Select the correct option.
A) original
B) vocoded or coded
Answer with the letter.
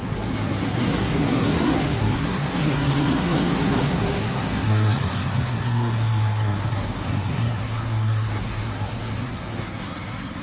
B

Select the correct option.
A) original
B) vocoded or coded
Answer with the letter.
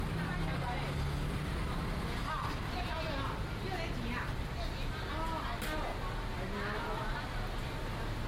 A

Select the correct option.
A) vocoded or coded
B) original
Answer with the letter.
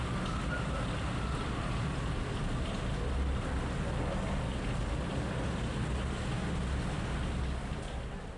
B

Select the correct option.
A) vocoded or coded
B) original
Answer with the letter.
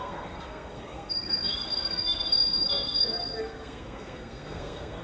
A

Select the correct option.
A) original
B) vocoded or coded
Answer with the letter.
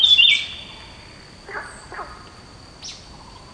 A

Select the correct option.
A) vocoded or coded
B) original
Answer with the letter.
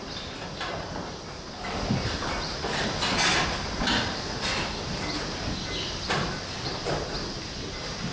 B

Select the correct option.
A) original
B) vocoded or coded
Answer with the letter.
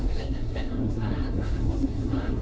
B